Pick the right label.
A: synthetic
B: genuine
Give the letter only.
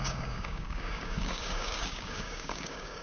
A